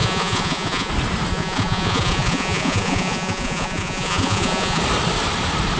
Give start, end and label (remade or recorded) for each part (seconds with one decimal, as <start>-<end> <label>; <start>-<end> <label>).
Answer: 0.0-0.9 remade; 0.9-1.3 recorded; 1.3-4.8 remade; 4.8-5.8 recorded